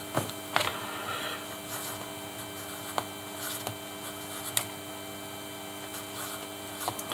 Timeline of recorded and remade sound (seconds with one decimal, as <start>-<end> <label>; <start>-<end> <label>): 0.0-7.1 recorded